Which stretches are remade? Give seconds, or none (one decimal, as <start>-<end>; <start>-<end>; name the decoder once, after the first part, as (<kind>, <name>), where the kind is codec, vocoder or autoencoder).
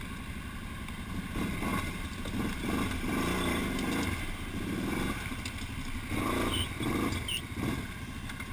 none